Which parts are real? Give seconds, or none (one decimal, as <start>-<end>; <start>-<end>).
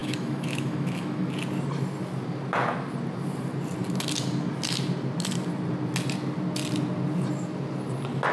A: 1.3-8.3